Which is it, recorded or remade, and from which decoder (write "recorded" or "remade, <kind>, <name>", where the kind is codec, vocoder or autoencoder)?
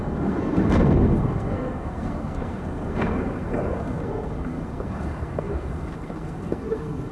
remade, codec, SNAC